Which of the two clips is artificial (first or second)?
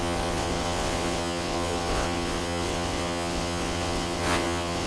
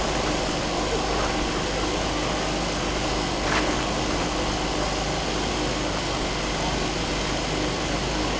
first